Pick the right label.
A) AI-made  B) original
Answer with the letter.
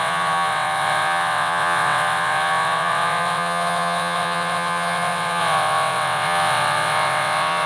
A